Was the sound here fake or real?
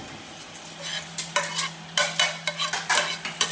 real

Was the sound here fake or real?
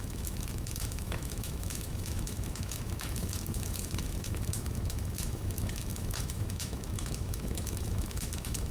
fake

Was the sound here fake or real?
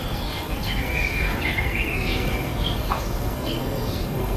fake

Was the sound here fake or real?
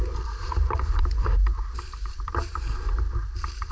fake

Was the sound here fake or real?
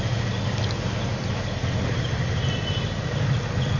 real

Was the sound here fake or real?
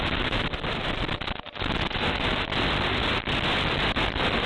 real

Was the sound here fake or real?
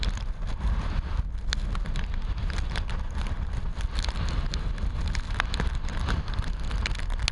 real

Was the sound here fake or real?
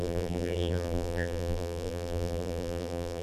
fake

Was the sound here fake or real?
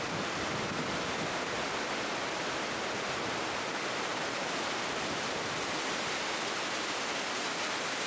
real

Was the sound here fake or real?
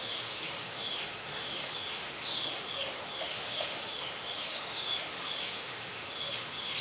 fake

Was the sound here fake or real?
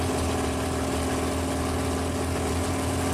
real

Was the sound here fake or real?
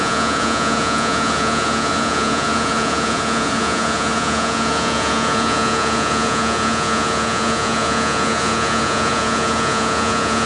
fake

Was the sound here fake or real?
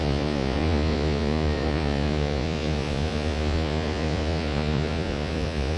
fake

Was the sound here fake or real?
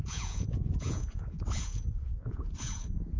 fake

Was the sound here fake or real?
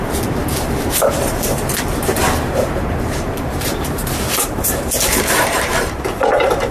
fake